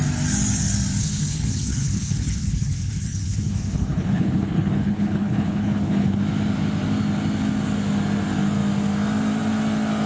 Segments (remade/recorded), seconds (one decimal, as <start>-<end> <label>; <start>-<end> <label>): 0.0-1.0 recorded; 1.0-6.2 remade; 6.2-10.1 recorded